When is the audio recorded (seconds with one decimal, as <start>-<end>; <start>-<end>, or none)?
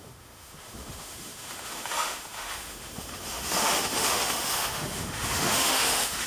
none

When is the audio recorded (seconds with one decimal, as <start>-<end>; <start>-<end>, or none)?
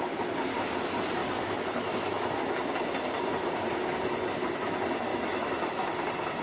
0.0-1.2; 2.4-5.1; 5.7-6.4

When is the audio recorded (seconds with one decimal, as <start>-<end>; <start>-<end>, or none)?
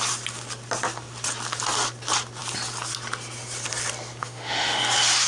0.0-4.2; 4.8-5.3